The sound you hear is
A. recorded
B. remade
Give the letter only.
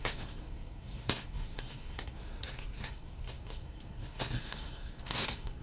B